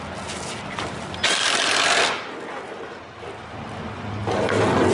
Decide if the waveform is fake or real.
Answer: real